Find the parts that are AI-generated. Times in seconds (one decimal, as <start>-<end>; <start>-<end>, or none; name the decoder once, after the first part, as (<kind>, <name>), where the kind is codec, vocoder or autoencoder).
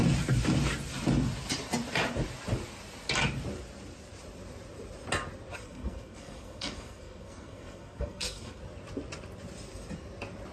5.6-8.6 (codec, SNAC)